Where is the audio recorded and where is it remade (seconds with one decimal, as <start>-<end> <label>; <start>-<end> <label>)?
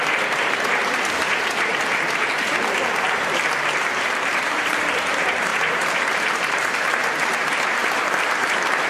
0.0-1.7 remade; 1.7-4.1 recorded; 4.1-8.9 remade